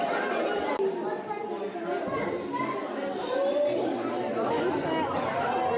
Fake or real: real